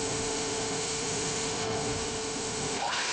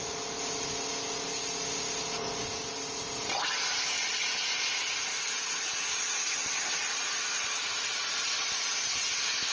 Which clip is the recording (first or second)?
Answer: second